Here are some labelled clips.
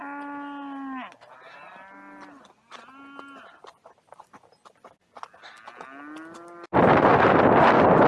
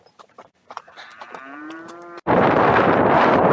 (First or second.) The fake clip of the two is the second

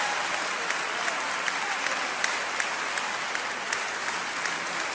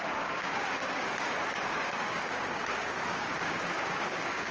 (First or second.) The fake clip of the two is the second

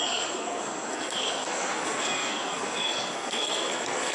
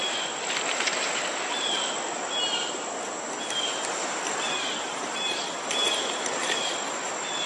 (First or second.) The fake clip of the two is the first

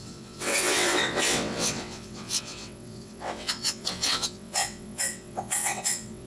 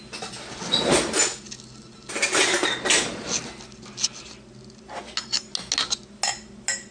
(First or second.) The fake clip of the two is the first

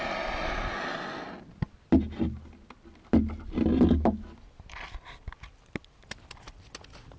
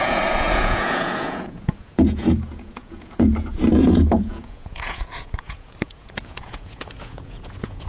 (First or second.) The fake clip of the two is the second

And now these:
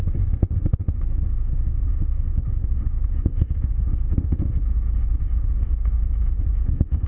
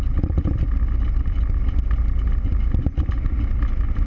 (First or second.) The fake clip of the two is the first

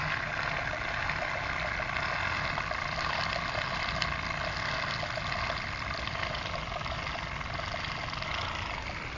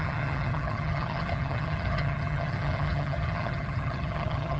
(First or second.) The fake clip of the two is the second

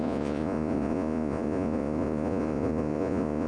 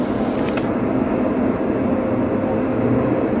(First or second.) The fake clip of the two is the first